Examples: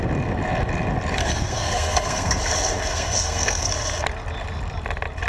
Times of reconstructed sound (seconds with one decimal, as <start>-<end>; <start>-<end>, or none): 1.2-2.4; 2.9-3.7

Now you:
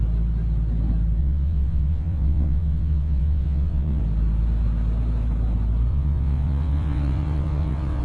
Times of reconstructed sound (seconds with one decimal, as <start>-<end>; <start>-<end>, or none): 1.2-4.0; 5.9-8.0

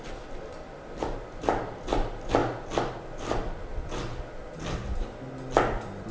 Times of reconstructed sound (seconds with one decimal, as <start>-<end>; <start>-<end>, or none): none

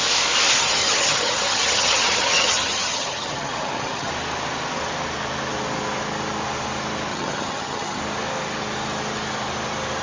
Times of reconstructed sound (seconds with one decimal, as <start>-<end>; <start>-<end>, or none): 0.8-4.1; 7.1-8.0

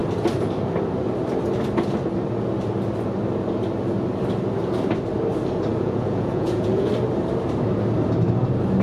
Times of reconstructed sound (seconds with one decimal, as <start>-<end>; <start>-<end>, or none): 5.7-6.9

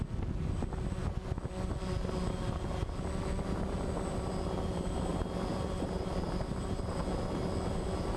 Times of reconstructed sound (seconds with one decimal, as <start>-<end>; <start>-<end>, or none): 5.1-7.0